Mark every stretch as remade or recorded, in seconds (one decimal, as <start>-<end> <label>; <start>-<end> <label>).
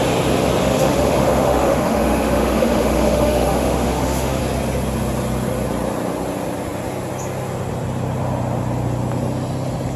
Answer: 0.0-0.6 recorded; 0.6-4.4 remade; 4.4-10.0 recorded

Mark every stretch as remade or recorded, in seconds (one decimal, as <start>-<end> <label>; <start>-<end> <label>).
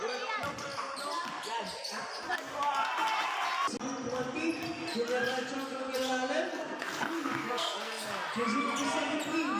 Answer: 0.0-6.5 recorded; 6.5-8.1 remade; 8.1-9.6 recorded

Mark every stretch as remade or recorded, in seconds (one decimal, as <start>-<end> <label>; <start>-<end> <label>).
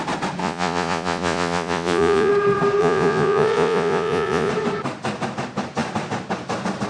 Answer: 0.0-0.4 recorded; 0.4-2.3 remade; 2.3-2.8 recorded; 2.8-4.5 remade; 4.5-6.9 recorded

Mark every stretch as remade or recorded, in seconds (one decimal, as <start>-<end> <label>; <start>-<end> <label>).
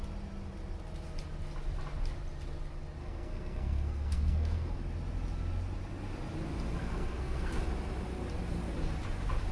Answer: 0.0-3.0 recorded; 3.0-4.8 remade; 4.8-6.8 recorded; 6.8-7.6 remade; 7.6-9.5 recorded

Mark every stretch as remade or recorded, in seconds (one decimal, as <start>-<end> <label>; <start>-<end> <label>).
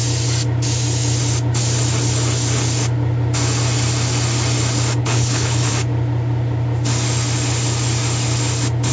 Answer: 0.0-5.0 recorded; 5.0-5.7 remade; 5.7-8.9 recorded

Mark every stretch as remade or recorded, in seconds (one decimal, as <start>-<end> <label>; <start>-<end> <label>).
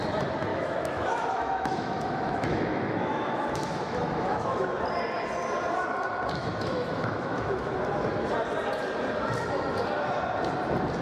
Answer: 0.0-0.5 recorded; 0.5-4.6 remade; 4.6-6.4 recorded; 6.4-7.7 remade; 7.7-11.0 recorded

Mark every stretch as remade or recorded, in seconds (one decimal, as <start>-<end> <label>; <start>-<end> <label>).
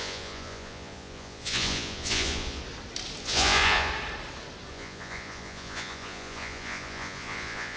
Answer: 0.0-2.6 remade; 2.6-3.2 recorded; 3.2-3.9 remade; 3.9-4.7 recorded; 4.7-7.8 remade